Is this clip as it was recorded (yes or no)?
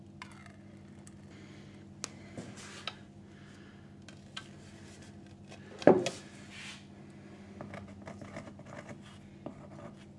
yes